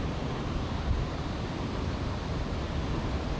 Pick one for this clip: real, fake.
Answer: real